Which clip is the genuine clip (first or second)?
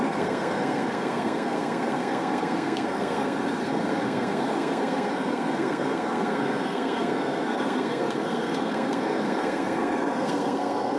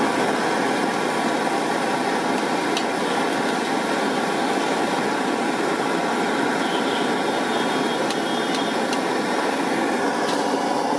second